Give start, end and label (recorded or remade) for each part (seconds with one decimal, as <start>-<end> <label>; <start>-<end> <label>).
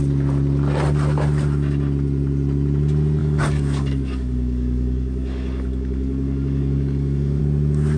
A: 0.0-3.2 recorded; 3.2-7.4 remade; 7.4-8.0 recorded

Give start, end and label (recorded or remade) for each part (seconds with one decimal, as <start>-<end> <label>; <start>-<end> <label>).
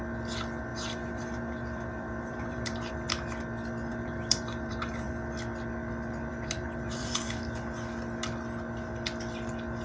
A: 0.0-0.7 recorded; 0.7-2.9 remade; 2.9-3.9 recorded; 3.9-5.1 remade; 5.1-6.3 recorded; 6.3-7.3 remade; 7.3-9.8 recorded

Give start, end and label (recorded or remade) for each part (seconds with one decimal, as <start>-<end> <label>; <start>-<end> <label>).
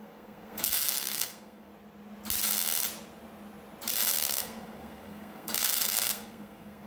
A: 0.0-1.7 remade; 1.7-4.1 recorded; 4.1-6.9 remade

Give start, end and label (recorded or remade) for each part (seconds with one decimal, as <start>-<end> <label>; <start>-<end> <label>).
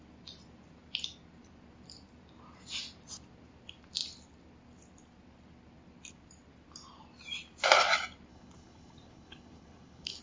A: 0.0-8.3 recorded; 8.3-10.2 remade